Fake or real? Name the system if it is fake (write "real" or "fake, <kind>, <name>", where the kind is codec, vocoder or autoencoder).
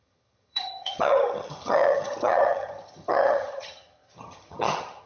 fake, vocoder, HiFi-GAN